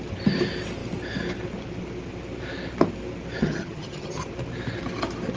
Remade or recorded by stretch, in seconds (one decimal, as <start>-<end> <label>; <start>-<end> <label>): 0.0-3.4 recorded; 3.4-4.2 remade; 4.2-5.4 recorded